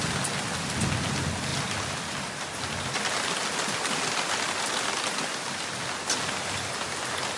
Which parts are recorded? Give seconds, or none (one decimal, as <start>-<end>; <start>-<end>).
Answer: 0.0-7.4